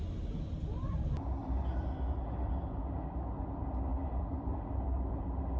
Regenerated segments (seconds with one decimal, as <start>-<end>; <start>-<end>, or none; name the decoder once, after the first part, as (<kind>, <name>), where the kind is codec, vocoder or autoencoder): 3.9-4.7 (vocoder, BigVGAN v2)